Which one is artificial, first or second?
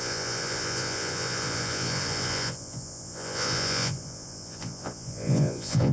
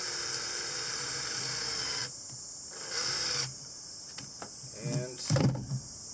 first